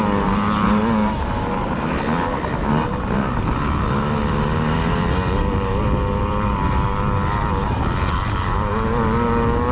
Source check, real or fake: real